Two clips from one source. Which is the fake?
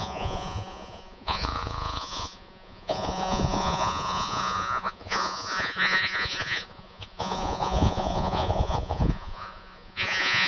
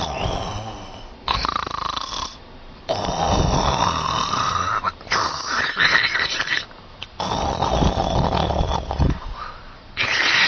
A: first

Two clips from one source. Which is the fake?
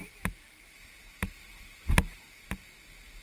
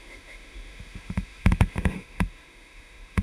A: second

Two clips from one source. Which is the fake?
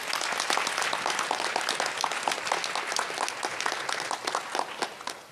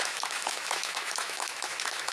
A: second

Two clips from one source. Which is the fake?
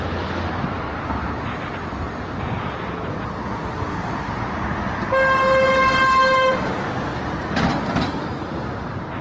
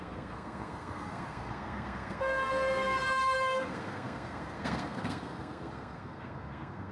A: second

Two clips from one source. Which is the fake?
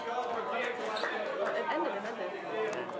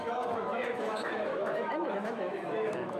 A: second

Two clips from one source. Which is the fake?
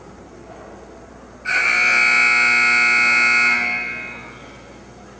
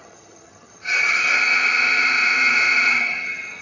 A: second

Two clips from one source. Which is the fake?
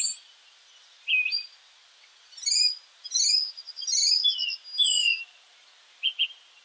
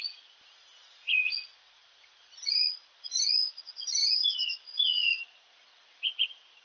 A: second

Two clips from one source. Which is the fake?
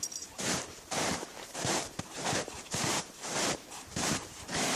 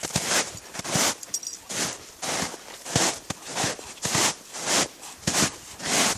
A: first